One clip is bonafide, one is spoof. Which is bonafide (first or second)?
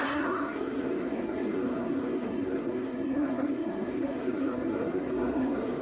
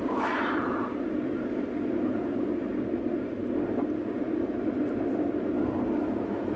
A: second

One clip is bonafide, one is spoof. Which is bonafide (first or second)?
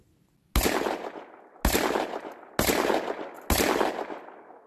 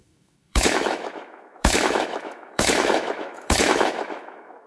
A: first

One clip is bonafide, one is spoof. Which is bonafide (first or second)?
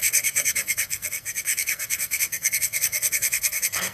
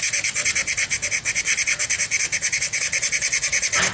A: second